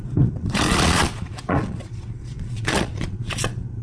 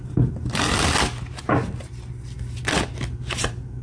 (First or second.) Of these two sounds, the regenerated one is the first